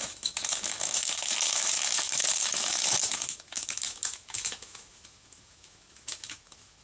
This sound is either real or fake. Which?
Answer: fake